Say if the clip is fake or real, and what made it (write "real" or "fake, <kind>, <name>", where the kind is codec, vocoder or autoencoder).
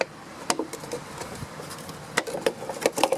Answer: real